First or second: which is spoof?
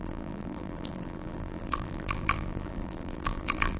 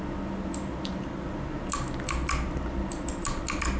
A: first